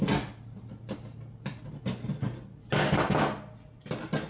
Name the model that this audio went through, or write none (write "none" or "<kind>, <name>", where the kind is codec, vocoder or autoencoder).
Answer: none